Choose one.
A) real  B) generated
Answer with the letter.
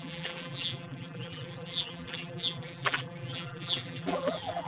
B